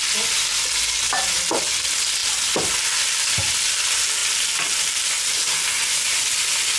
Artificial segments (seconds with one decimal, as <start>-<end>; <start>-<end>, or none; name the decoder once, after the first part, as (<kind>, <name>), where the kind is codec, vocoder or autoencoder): none